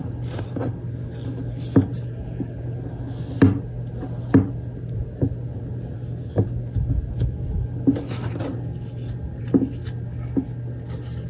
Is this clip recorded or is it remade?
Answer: recorded